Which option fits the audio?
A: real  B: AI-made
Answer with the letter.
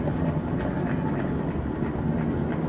A